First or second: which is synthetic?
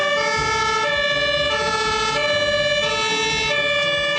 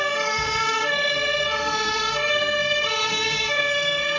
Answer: second